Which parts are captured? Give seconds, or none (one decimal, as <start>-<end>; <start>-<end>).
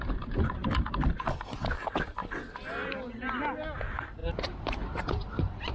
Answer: 0.6-3.8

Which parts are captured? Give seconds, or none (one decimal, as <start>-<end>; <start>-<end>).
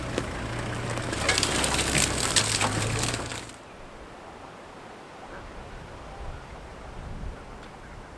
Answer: 0.0-8.2